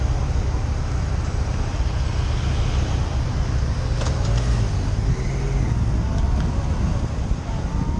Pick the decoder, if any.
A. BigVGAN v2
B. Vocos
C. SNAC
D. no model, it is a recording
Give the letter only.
D